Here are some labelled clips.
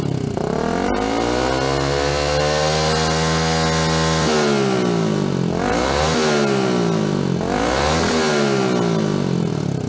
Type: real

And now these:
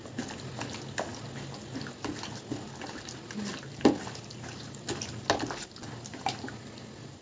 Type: real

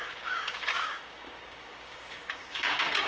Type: fake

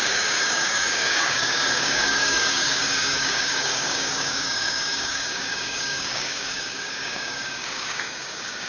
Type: fake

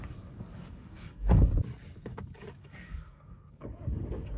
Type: fake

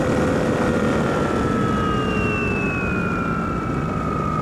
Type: real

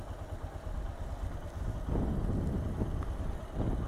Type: real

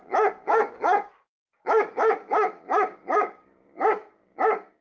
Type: fake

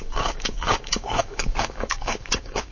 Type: fake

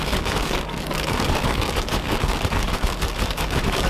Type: fake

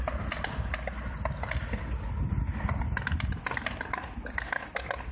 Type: real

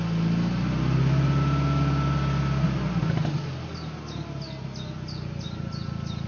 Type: real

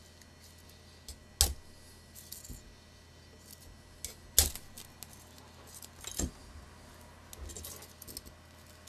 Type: real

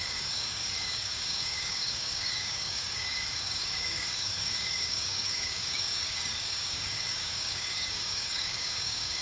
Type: fake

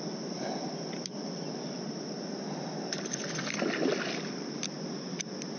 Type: real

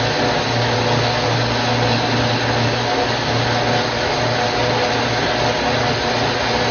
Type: real